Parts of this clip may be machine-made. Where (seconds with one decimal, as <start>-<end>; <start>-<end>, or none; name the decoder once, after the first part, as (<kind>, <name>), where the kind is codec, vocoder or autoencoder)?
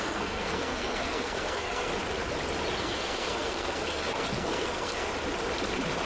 0.0-1.9 (codec, SNAC); 2.8-5.1